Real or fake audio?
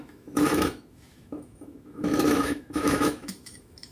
fake